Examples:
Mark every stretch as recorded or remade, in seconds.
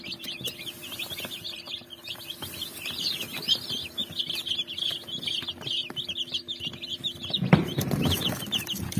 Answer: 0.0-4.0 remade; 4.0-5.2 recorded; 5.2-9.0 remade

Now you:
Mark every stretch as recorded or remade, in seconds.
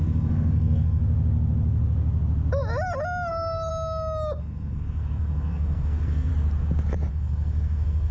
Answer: 0.0-1.0 remade; 1.0-3.3 recorded; 3.3-3.7 remade; 3.7-4.4 recorded; 4.4-6.3 remade; 6.3-7.1 recorded; 7.1-8.1 remade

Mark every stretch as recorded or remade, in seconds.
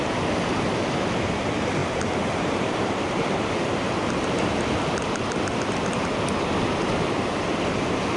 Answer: 0.0-8.2 recorded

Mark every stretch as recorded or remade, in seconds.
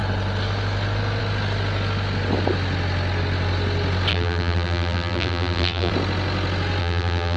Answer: 0.0-4.1 recorded; 4.1-5.9 remade; 5.9-6.8 recorded; 6.8-7.4 remade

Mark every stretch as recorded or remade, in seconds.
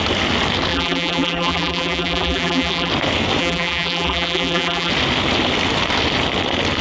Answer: 0.0-0.7 recorded; 0.7-2.9 remade; 2.9-3.4 recorded; 3.4-4.9 remade; 4.9-6.8 recorded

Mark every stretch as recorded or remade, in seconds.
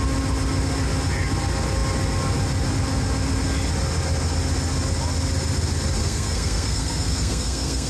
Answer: 0.0-6.0 recorded; 6.0-7.9 remade